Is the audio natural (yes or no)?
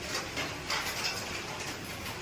yes